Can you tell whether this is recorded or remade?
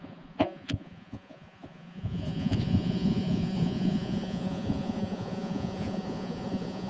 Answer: remade